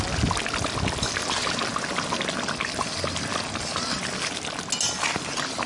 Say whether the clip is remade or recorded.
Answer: recorded